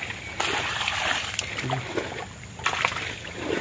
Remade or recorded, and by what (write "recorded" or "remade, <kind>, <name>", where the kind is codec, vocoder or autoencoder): remade, vocoder, BigVGAN v2